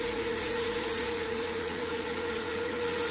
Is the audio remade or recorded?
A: remade